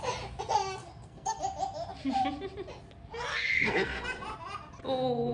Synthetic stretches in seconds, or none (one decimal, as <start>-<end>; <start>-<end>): 0.8-1.4; 3.3-4.0